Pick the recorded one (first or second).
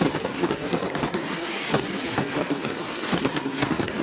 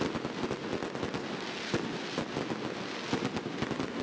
second